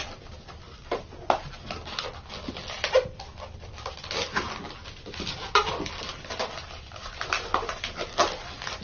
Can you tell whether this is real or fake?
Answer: real